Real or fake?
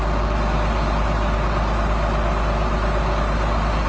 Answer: real